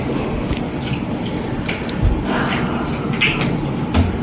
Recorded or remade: recorded